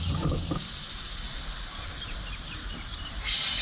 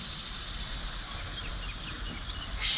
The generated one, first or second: first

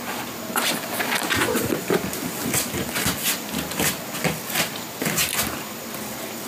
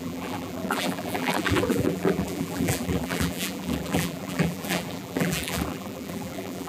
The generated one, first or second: second